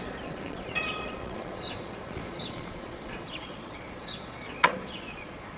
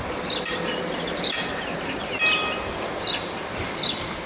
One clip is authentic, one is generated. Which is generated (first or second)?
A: first